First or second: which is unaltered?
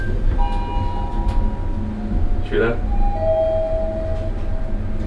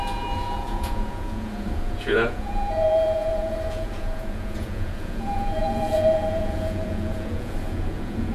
first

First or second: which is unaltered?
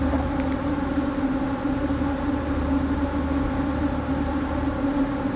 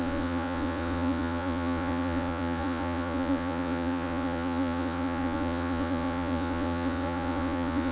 first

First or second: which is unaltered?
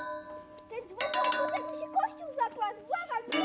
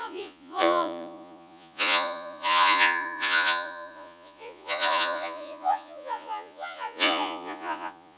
first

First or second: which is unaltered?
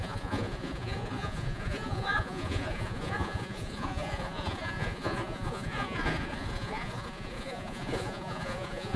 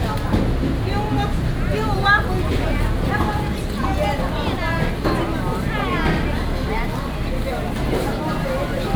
second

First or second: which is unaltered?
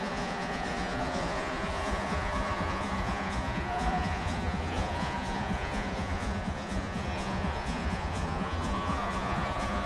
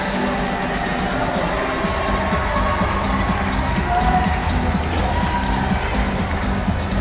second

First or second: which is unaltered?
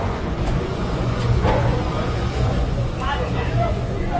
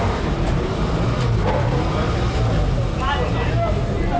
second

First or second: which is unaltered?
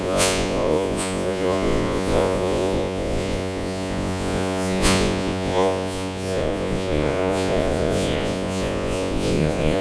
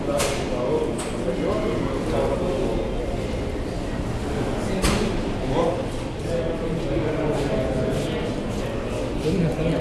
second